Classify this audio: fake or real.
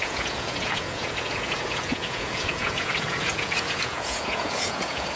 fake